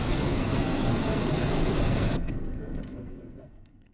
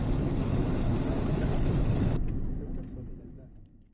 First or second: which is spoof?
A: first